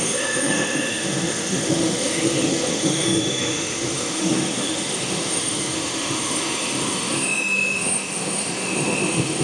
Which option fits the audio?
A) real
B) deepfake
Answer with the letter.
B